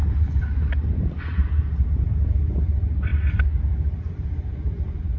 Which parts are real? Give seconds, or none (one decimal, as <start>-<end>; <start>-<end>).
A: 0.0-1.2; 2.1-2.6; 3.1-3.6